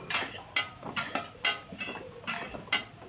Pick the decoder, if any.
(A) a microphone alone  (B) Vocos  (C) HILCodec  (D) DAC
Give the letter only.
A